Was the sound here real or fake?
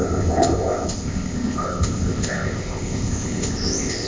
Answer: fake